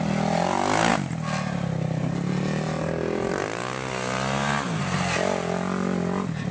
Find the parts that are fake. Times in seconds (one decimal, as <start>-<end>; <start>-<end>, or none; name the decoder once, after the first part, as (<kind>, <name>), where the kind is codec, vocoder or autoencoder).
none